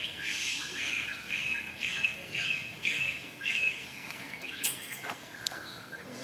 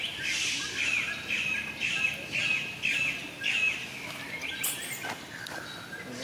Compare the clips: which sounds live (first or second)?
second